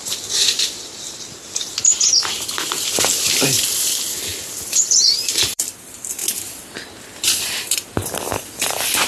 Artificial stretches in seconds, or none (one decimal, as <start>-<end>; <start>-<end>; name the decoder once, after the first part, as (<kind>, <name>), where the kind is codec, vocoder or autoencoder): 0.0-6.2 (vocoder, BigVGAN v2); 7.7-9.1